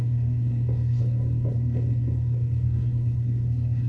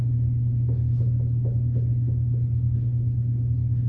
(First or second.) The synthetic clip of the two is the first